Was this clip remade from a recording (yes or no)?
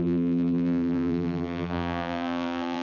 yes